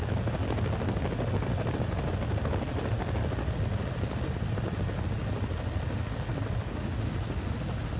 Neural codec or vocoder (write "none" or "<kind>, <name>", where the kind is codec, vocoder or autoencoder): none